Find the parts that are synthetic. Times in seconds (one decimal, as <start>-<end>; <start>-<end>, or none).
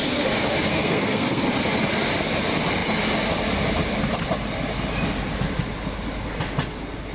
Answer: 0.7-1.4